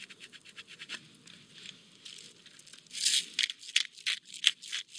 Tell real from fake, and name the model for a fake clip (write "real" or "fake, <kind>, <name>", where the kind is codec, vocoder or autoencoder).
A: real